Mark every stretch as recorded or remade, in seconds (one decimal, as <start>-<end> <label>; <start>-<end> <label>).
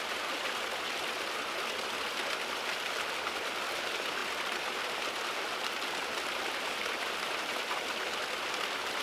0.0-9.0 recorded